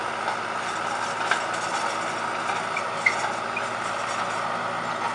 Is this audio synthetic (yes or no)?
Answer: no